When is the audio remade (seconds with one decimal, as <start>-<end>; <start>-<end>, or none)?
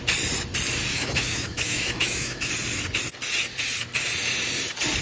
0.9-2.5